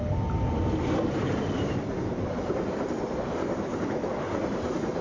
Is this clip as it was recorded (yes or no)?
yes